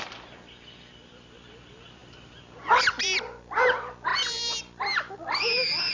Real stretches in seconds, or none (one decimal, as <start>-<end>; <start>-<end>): 0.0-5.9